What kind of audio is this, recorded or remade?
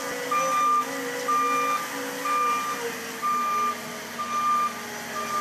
recorded